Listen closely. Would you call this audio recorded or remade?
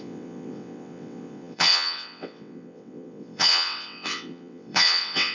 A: remade